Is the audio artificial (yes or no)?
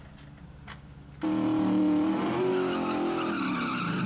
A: no